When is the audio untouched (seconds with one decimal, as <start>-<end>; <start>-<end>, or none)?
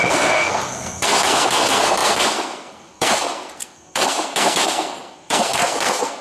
none